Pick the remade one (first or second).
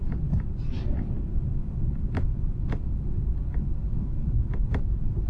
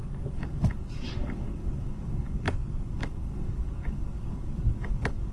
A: second